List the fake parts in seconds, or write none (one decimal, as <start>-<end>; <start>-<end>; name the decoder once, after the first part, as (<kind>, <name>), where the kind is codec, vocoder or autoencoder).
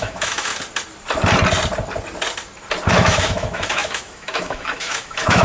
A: 0.0-0.5 (autoencoder, DAC-VAE); 2.9-5.4